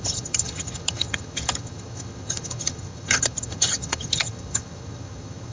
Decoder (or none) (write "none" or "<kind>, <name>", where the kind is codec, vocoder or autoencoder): vocoder, HiFi-GAN